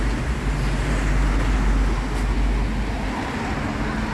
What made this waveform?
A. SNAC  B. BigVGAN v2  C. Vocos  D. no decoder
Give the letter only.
D